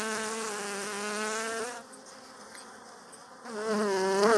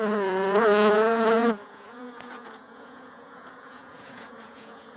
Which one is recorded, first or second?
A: first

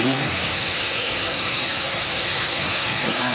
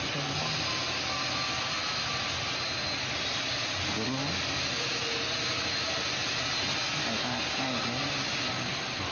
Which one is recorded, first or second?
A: second